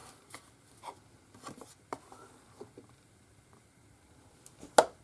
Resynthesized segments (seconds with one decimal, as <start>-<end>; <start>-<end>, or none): none